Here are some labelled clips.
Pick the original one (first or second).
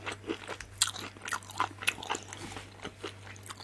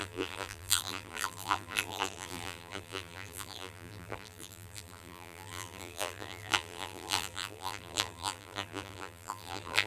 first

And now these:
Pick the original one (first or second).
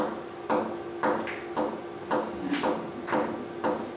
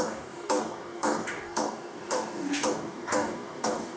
first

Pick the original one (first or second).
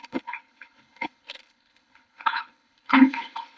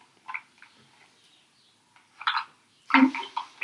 second